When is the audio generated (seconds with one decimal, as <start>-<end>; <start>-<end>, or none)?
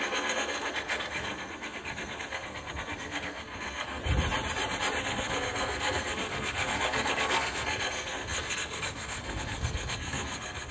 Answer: 0.0-4.0; 5.0-10.7